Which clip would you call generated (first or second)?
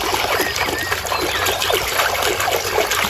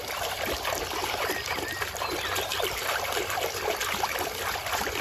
second